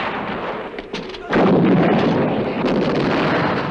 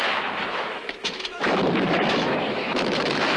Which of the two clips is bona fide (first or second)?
first